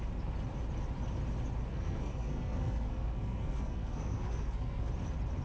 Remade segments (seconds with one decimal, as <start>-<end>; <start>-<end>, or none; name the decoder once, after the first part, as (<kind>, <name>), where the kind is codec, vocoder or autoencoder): 1.7-4.9 (codec, SNAC)